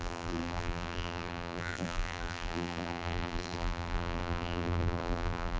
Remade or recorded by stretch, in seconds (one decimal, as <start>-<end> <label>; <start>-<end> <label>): 0.0-5.6 remade